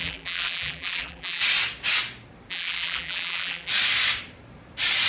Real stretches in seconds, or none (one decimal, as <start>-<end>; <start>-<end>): 1.4-2.5; 3.7-5.1